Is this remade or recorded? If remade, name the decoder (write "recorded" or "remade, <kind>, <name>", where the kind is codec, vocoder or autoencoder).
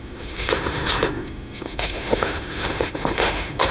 remade, autoencoder, DAC-VAE